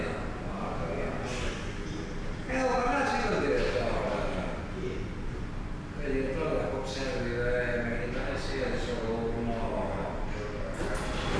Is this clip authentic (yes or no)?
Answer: yes